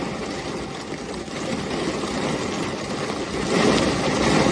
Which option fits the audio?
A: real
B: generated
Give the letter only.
A